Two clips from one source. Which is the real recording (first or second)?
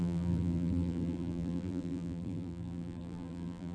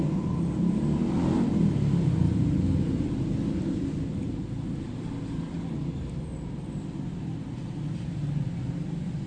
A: second